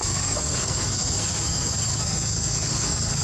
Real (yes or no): no